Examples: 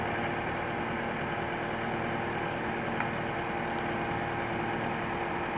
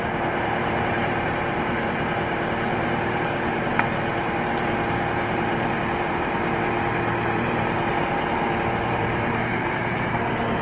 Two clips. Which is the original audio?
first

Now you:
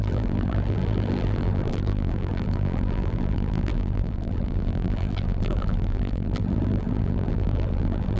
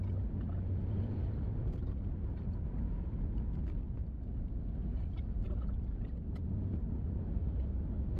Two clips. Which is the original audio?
second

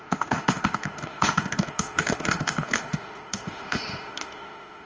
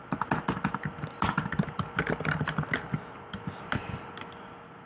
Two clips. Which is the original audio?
second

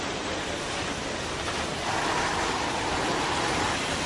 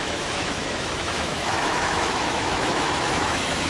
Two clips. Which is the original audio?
first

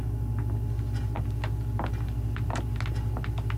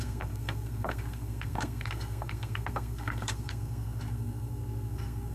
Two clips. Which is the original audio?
first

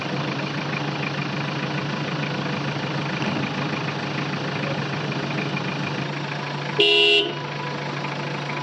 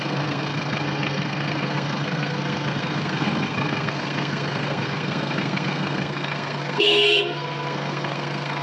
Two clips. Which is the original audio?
first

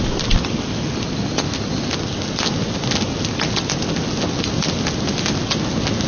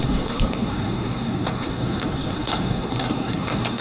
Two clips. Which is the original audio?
first